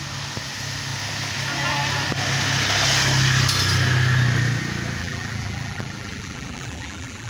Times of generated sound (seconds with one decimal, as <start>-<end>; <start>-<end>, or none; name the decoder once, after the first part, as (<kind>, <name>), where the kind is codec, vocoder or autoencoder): 5.0-7.3 (vocoder, BigVGAN v2)